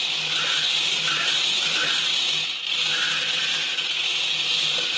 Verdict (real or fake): real